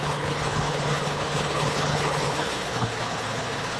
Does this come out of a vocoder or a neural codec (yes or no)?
yes